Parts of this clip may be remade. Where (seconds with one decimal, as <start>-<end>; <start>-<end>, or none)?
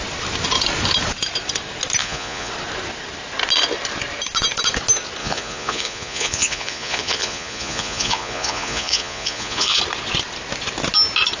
2.0-2.5; 5.2-9.8